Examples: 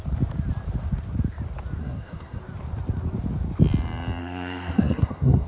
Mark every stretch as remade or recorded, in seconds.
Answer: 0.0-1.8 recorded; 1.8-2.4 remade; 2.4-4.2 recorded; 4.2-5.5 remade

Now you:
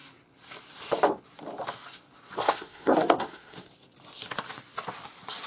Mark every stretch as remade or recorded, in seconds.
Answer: 0.0-2.4 recorded; 2.4-3.7 remade; 3.7-5.5 recorded

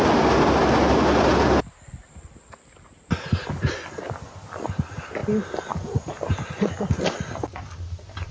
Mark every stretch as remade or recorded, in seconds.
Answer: 0.0-8.3 recorded

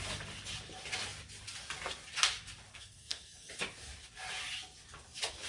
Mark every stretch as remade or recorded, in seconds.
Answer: 0.0-2.7 recorded; 2.7-3.5 remade; 3.5-5.5 recorded

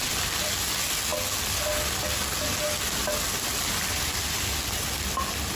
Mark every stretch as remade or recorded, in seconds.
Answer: 0.0-5.5 recorded

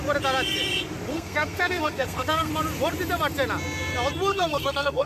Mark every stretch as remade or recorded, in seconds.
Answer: 0.0-1.1 recorded; 1.1-2.5 remade; 2.5-4.3 recorded; 4.3-5.1 remade

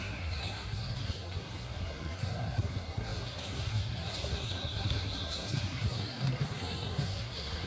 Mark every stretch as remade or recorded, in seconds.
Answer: 0.0-7.7 remade